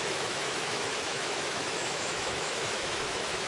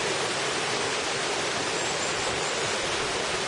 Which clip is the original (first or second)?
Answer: second